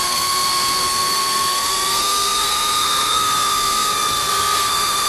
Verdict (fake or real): fake